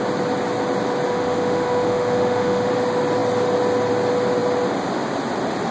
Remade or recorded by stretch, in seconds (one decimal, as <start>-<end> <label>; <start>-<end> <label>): 0.0-1.1 recorded; 1.1-2.7 remade; 2.7-5.7 recorded